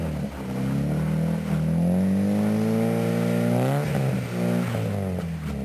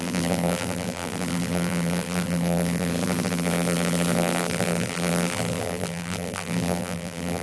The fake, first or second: second